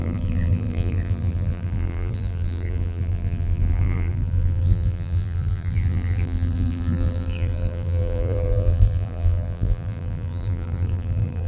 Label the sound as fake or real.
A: fake